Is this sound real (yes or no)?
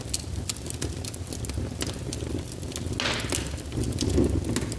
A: yes